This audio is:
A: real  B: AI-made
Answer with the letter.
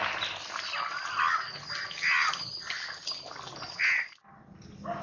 A